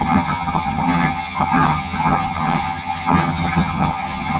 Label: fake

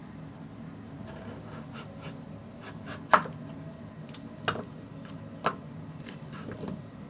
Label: real